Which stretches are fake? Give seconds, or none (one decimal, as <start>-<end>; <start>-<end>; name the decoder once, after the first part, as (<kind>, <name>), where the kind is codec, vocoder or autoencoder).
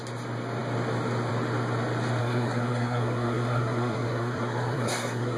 2.2-5.4 (codec, SNAC)